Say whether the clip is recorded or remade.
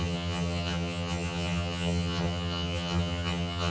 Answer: remade